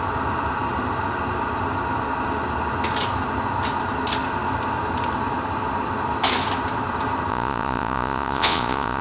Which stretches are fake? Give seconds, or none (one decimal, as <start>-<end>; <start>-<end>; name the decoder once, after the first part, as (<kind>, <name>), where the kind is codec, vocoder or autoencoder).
7.3-9.0 (vocoder, Vocos)